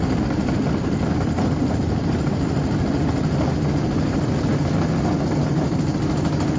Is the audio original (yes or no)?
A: yes